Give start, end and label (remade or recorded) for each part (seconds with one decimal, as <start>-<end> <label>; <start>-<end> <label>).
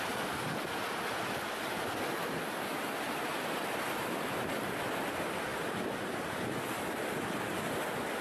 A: 0.0-8.2 recorded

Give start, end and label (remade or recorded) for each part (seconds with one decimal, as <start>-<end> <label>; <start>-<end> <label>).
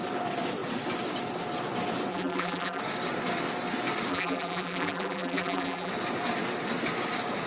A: 0.0-2.1 recorded; 2.1-2.8 remade; 2.8-4.1 recorded; 4.1-5.9 remade; 5.9-7.5 recorded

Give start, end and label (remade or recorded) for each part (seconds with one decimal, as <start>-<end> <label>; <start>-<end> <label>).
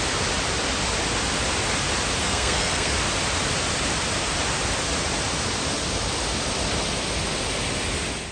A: 0.0-2.2 recorded; 2.2-2.9 remade; 2.9-8.3 recorded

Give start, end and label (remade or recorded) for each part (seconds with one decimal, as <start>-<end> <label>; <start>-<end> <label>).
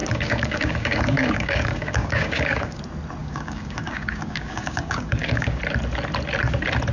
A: 0.0-2.8 remade; 2.8-3.2 recorded; 3.2-5.6 remade; 5.6-6.9 recorded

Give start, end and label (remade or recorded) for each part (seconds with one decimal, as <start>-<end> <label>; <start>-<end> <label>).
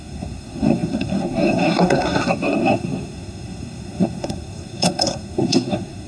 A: 0.0-6.1 remade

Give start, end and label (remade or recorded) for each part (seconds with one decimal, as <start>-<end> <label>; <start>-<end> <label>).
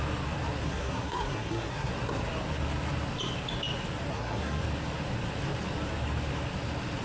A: 0.0-0.6 recorded; 0.6-1.9 remade; 1.9-4.1 recorded; 4.1-4.6 remade; 4.6-7.0 recorded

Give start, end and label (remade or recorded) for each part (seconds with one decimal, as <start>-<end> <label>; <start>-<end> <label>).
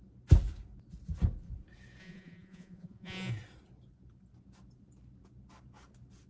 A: 0.0-2.0 recorded; 2.0-3.3 remade; 3.3-6.3 recorded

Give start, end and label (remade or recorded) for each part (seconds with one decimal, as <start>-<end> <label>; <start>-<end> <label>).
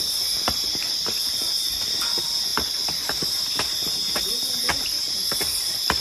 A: 0.0-6.0 remade